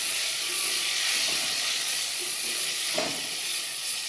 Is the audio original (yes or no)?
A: no